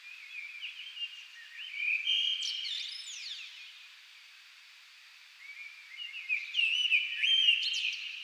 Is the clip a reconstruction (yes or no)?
no